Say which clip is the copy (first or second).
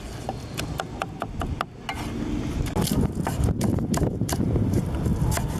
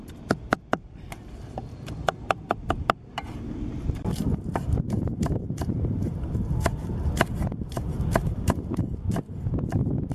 second